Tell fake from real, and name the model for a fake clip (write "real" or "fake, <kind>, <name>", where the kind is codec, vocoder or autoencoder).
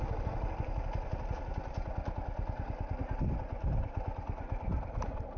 real